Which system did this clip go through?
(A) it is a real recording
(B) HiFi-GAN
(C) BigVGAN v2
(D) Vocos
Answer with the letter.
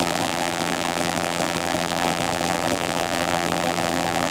C